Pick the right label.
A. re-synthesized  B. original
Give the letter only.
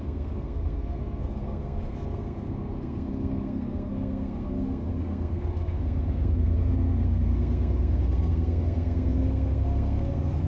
A